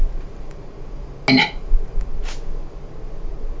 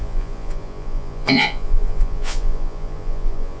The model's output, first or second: second